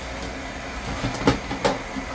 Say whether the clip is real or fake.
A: real